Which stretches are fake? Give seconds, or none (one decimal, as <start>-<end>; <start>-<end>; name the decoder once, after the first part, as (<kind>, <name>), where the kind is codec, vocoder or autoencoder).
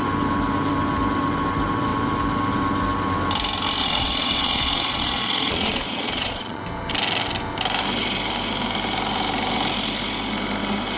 3.8-6.6 (vocoder, Vocos)